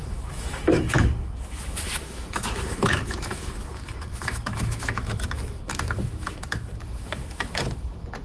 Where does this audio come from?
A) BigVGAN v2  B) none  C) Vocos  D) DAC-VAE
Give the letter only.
D